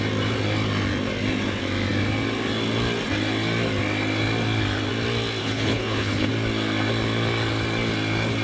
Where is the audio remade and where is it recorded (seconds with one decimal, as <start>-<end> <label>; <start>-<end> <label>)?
0.0-5.4 recorded; 5.4-6.3 remade; 6.3-8.4 recorded